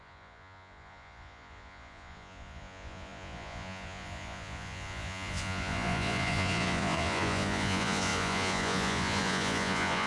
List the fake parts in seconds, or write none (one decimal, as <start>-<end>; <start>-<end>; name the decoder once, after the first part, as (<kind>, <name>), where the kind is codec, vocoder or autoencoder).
0.0-10.1 (vocoder, Vocos)